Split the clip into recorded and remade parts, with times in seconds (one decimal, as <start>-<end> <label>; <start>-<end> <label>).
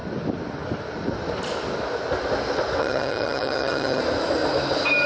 0.0-2.8 recorded; 2.8-4.0 remade; 4.0-5.1 recorded